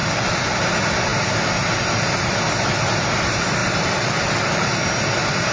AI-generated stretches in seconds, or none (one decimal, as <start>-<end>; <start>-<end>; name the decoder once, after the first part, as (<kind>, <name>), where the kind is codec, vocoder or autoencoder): 0.0-0.7 (vocoder, BigVGAN v2); 3.6-4.3